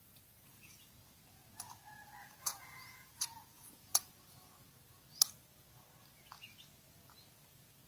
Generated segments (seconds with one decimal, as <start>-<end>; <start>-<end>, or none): 0.0-0.9; 2.2-4.1